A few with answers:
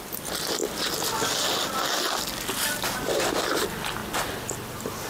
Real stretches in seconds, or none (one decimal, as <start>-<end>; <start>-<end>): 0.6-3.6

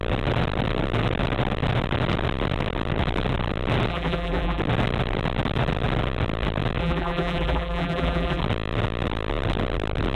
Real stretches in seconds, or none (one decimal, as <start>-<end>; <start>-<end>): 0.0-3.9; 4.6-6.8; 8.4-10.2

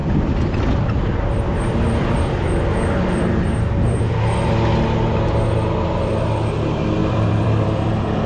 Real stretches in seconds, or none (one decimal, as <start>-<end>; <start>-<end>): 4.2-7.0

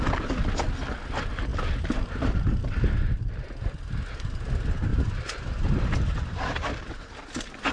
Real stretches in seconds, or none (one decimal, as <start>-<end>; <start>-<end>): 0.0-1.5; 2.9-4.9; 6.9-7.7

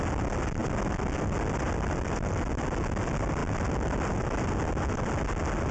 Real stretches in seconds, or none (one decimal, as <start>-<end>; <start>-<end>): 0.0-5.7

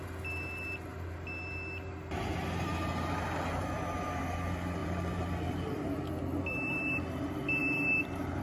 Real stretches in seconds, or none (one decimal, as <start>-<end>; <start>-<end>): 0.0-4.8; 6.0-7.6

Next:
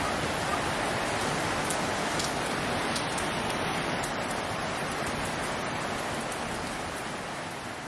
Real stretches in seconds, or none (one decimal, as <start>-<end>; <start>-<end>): 0.0-2.8; 4.8-7.9

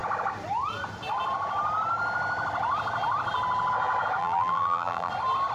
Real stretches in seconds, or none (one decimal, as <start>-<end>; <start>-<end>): 0.0-4.2; 5.1-5.5